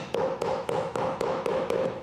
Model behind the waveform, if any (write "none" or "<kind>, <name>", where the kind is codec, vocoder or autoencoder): autoencoder, DAC-VAE